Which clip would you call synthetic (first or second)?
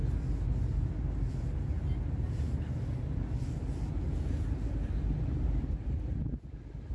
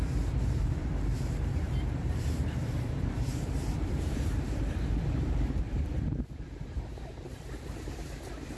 second